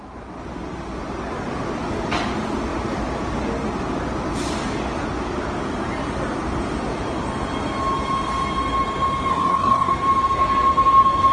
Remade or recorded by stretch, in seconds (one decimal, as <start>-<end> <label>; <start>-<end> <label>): 0.0-9.3 recorded; 9.3-9.9 remade; 9.9-11.3 recorded